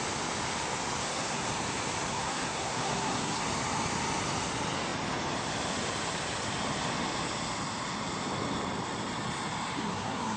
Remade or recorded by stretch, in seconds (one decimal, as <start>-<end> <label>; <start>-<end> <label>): 0.0-1.0 recorded; 1.0-1.5 remade; 1.5-2.1 recorded; 2.1-3.4 remade; 3.4-9.7 recorded; 9.7-10.4 remade